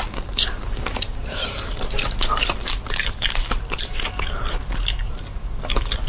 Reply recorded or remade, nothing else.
remade